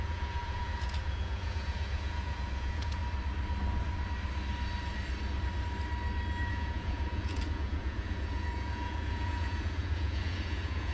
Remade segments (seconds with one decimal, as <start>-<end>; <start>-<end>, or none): 0.0-3.0; 6.5-10.9